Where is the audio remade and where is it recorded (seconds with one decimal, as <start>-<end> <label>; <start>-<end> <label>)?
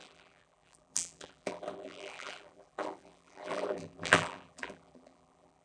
0.0-5.6 remade